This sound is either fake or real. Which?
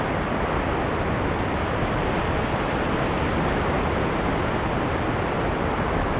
real